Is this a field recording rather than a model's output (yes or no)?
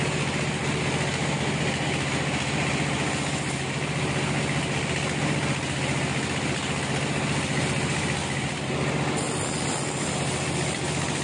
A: yes